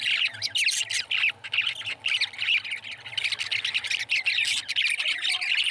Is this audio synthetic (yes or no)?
no